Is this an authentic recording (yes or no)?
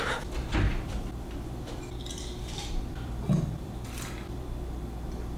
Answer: no